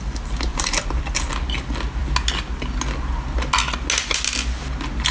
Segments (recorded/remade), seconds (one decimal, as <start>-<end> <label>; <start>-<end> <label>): 0.0-0.5 recorded; 0.5-1.0 remade; 1.0-5.1 recorded